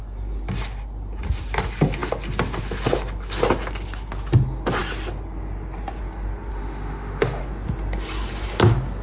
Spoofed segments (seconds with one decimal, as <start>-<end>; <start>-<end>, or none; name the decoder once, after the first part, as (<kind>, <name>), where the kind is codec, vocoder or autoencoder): 6.5-7.4 (autoencoder, DAC-VAE)